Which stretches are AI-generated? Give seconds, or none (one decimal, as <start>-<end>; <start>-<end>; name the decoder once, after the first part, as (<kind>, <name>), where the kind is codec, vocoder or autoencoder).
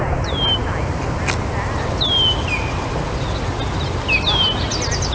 none